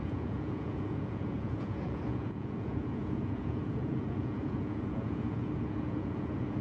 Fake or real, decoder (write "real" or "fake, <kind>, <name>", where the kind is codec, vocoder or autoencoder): fake, vocoder, Vocos